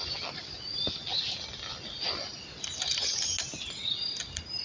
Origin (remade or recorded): recorded